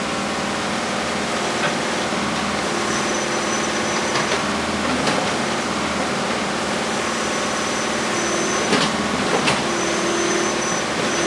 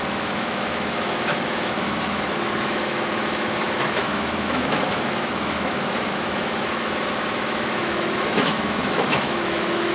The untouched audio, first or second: first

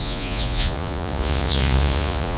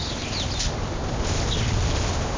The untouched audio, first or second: second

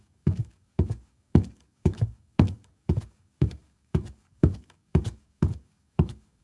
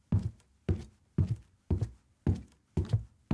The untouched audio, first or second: second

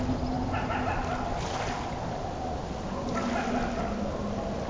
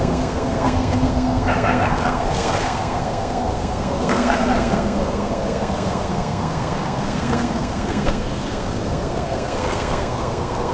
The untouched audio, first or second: first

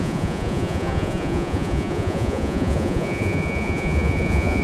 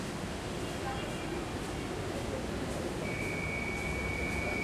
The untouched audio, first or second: second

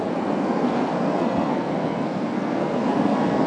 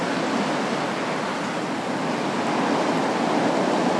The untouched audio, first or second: second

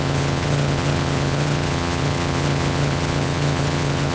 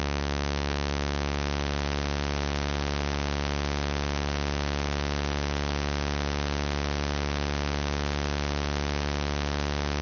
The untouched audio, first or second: second